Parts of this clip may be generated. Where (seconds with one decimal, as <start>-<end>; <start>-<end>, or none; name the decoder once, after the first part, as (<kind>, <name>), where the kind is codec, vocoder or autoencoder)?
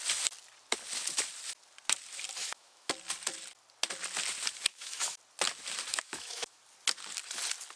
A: 2.4-2.9 (autoencoder, DAC-VAE); 4.7-5.2; 5.9-6.6